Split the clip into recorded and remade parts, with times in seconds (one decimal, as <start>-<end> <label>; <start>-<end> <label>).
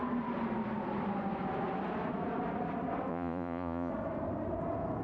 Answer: 0.0-3.1 recorded; 3.1-3.9 remade; 3.9-5.0 recorded